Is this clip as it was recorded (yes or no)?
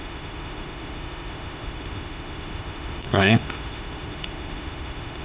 no